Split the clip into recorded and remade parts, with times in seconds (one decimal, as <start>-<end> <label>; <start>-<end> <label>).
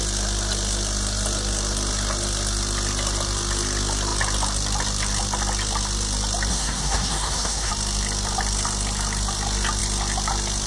0.0-6.5 recorded; 6.5-7.7 remade; 7.7-10.7 recorded